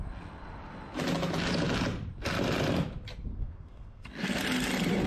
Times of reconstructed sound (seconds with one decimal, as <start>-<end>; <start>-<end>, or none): 3.3-4.4